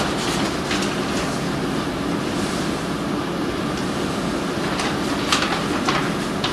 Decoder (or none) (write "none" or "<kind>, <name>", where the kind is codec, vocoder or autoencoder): none